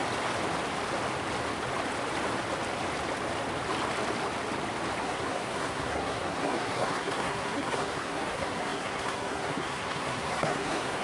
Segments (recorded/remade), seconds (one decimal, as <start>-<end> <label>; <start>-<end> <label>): 0.0-5.0 recorded; 5.0-11.0 remade